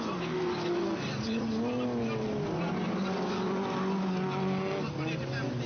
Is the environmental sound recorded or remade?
recorded